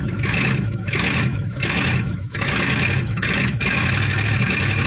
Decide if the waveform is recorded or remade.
remade